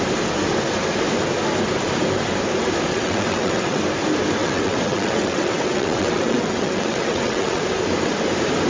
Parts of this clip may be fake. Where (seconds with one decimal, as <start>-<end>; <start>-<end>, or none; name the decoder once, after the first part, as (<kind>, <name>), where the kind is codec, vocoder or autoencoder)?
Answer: 2.9-3.8 (vocoder, WaveNeXt); 4.4-7.6